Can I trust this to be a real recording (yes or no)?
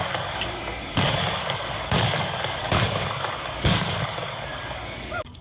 no